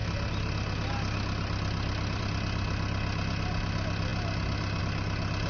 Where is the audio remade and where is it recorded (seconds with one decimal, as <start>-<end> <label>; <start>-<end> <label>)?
0.0-5.5 recorded